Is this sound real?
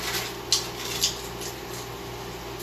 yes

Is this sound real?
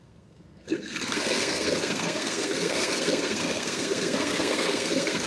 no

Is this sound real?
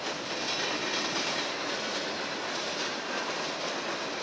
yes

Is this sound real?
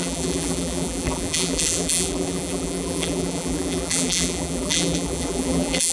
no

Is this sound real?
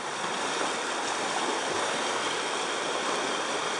yes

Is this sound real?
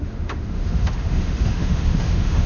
no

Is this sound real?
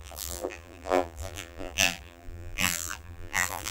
no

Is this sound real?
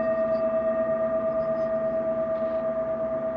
yes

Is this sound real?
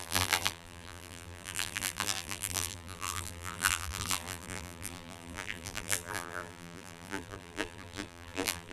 no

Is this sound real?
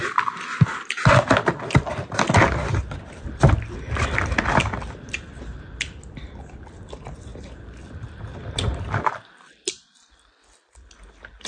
yes